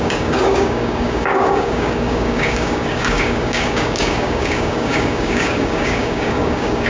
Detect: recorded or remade remade